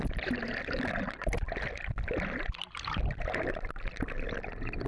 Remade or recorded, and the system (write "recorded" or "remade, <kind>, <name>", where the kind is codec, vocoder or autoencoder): recorded